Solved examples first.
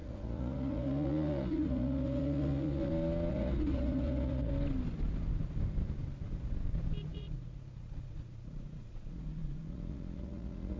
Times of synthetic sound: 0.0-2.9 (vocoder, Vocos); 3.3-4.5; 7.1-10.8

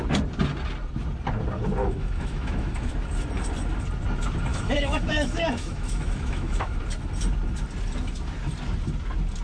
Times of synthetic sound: 1.8-2.9 (autoencoder, DAC-VAE); 4.5-6.8

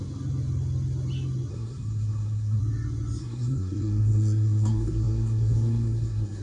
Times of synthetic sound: 1.5-2.6 (codec, SNAC); 3.2-6.4

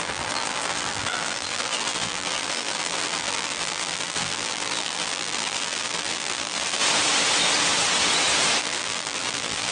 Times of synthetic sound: 0.0-6.8 (vocoder, BigVGAN v2); 8.6-9.7

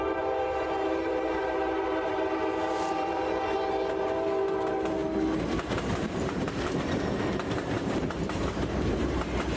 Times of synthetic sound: 0.0-2.4 (vocoder, BigVGAN v2); 2.9-5.0; 5.9-9.6

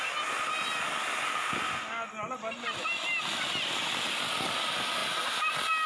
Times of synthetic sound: none

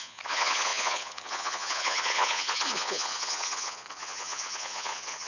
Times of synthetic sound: 0.0-5.3 (vocoder, Vocos)

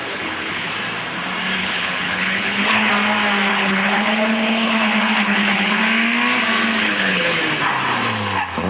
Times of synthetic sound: 0.0-0.7 (codec, HILCodec); 1.6-2.9; 3.5-5.8; 6.8-7.4